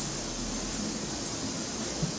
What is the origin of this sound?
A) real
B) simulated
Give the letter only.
A